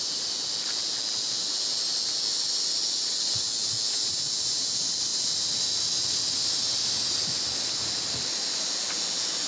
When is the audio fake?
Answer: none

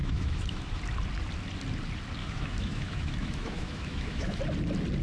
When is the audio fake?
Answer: 0.0-0.8 (autoencoder, DAC-VAE); 2.2-4.4

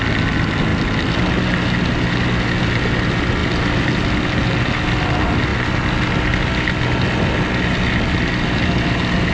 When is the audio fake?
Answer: none

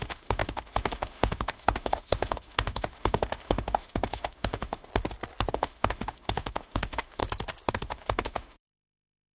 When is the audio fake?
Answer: 0.0-4.9 (autoencoder, DAC-VAE); 5.5-7.2; 7.7-9.4

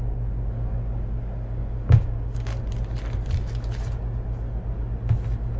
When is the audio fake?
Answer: 0.0-2.5 (codec, DAC)

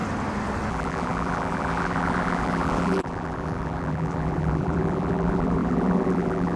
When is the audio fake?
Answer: 0.7-6.6 (vocoder, BigVGAN v2)

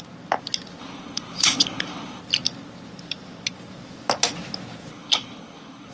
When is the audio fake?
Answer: 0.8-2.2 (codec, HILCodec); 4.9-5.9